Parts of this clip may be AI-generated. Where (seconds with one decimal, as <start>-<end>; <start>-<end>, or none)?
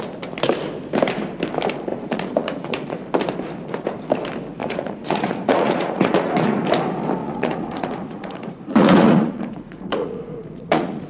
1.9-3.0; 4.6-6.6; 7.2-11.1